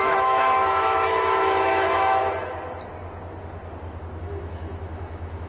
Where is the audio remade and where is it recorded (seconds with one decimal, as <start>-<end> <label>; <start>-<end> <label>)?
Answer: 0.0-2.2 remade; 2.2-4.2 recorded; 4.2-5.5 remade